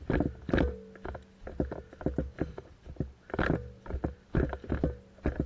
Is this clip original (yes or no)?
yes